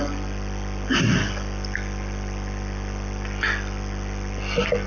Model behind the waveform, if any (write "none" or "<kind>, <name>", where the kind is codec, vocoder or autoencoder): none